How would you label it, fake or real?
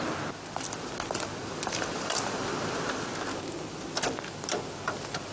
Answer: real